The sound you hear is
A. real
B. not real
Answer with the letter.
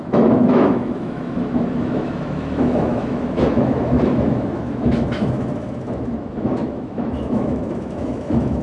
B